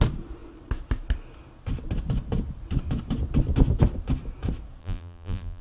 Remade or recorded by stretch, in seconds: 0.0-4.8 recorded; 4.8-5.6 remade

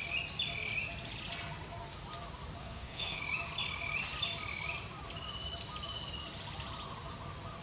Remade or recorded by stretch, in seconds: 0.0-2.6 recorded; 2.6-3.2 remade; 3.2-7.6 recorded

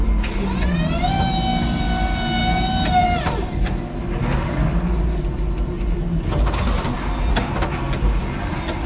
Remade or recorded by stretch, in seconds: 0.0-8.9 recorded